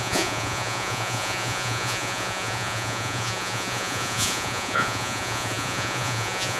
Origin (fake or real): fake